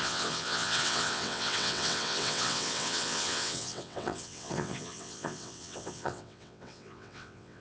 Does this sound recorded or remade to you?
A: remade